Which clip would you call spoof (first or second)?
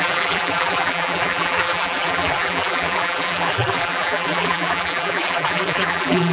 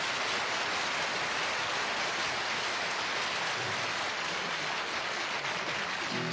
first